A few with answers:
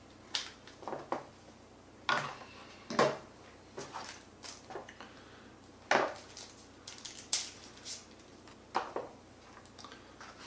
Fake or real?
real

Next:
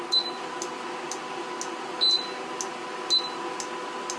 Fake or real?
real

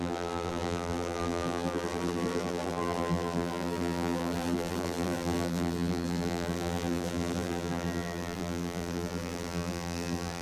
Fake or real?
fake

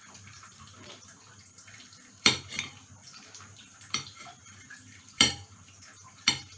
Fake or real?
fake